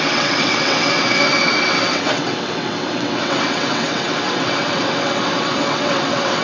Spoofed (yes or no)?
yes